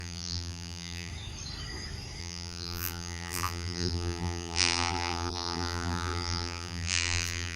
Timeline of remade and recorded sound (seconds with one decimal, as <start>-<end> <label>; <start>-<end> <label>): 0.0-1.1 remade; 1.1-2.2 recorded; 2.2-7.6 remade